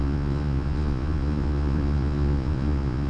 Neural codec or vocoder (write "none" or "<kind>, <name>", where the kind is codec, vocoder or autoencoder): vocoder, Vocos